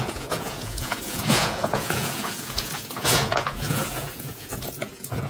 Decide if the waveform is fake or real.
fake